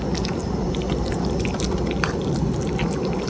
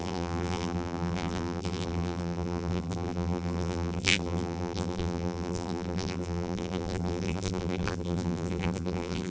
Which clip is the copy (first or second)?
second